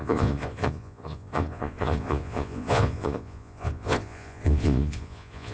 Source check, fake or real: fake